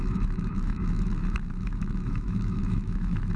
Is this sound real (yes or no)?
no